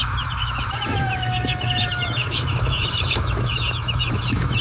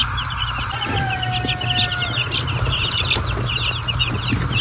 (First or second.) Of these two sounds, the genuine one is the second